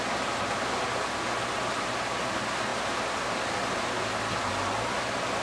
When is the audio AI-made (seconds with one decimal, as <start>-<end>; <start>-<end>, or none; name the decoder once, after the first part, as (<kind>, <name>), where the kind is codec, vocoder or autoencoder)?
none